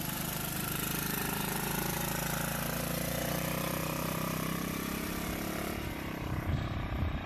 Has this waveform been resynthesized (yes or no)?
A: yes